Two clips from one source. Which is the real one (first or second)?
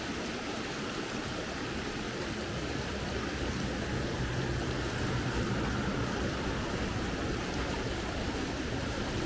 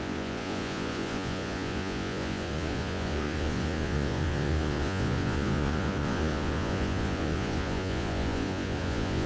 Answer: first